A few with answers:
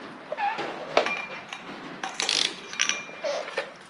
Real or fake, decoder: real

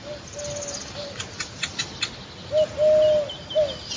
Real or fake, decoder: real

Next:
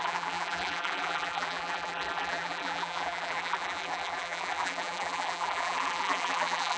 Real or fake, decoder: fake, vocoder, BigVGAN v2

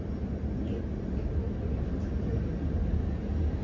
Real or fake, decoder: real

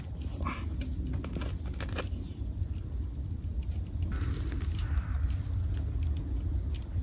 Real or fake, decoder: real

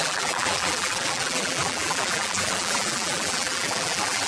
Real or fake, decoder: fake, vocoder, BigVGAN v2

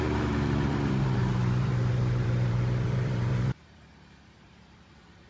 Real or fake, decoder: fake, vocoder, BigVGAN v2